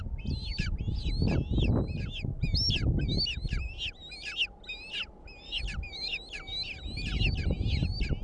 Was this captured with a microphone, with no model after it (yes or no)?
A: yes